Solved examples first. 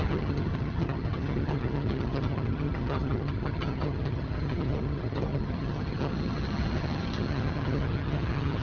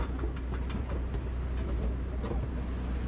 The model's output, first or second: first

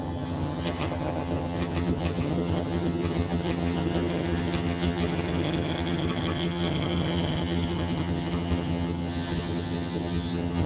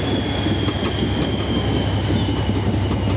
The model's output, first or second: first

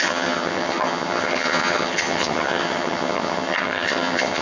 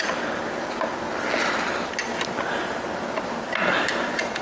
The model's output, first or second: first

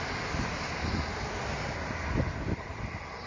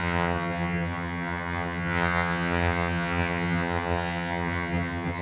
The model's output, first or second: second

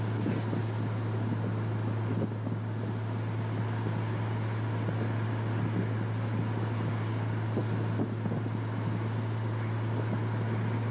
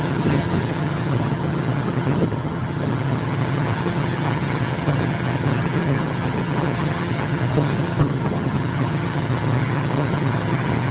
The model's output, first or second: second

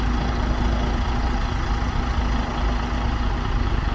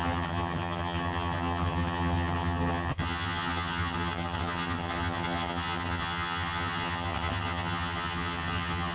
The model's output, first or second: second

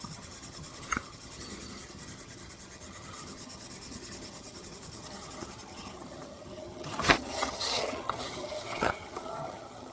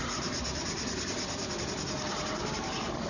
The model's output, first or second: first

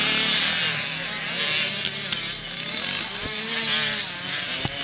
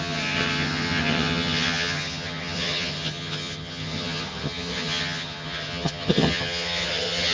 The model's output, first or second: second